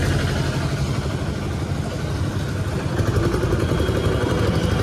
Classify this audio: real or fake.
real